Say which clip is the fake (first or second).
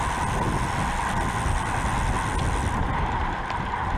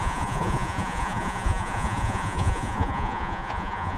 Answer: second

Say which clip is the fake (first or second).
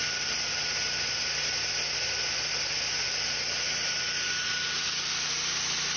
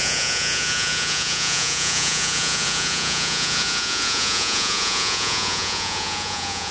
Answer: second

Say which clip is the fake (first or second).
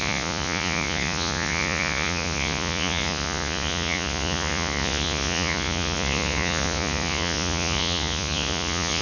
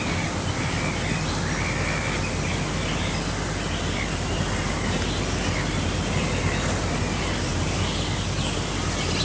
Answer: first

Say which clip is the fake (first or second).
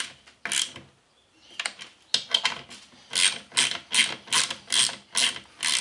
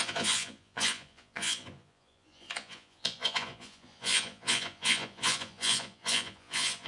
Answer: second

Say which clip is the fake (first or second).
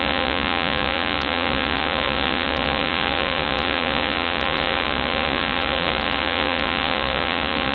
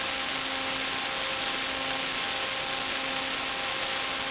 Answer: first